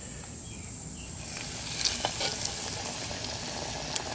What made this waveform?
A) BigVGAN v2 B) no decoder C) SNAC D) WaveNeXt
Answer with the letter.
B